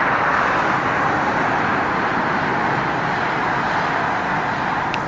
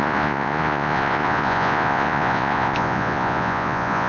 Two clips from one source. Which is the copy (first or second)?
second